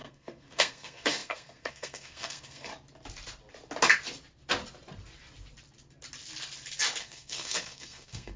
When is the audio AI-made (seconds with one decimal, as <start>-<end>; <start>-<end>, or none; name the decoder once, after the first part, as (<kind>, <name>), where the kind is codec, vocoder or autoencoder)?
0.0-2.7 (codec, SNAC); 7.0-8.4